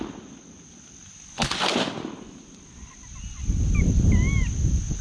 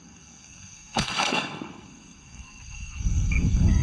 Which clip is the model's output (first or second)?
second